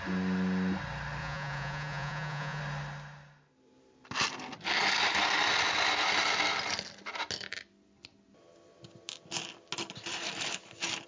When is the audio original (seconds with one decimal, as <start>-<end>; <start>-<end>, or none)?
0.0-1.2; 2.6-11.1